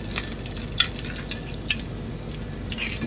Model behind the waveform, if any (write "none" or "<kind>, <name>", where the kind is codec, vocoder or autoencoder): none